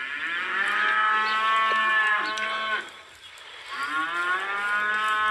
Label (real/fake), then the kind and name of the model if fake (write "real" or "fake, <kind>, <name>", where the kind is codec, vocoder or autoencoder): real